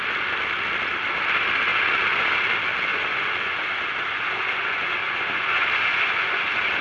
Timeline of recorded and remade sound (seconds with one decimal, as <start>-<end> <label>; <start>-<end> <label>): 0.0-1.7 recorded; 1.7-2.3 remade; 2.3-2.9 recorded; 2.9-6.8 remade